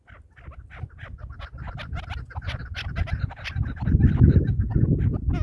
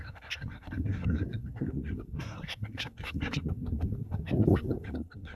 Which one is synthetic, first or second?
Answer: second